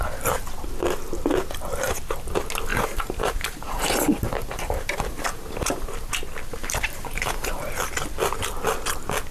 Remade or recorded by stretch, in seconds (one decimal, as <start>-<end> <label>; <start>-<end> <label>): 0.0-2.7 recorded; 2.7-6.1 remade; 6.1-6.6 recorded; 6.6-7.7 remade; 7.7-9.3 recorded